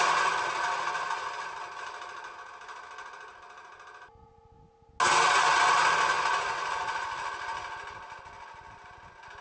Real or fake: real